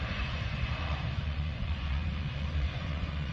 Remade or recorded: remade